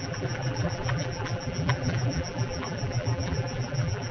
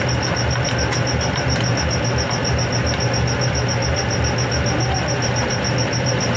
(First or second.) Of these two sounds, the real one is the second